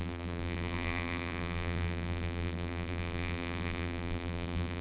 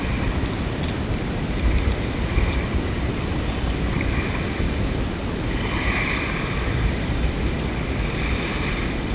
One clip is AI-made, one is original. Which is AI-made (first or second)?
first